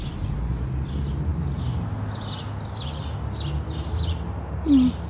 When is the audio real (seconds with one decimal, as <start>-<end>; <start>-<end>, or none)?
0.0-5.1